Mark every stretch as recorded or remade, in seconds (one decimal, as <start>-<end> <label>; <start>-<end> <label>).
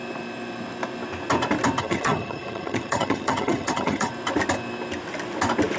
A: 0.0-1.8 recorded; 1.8-4.1 remade; 4.1-5.8 recorded